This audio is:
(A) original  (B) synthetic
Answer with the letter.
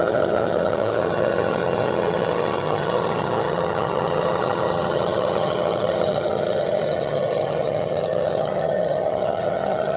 B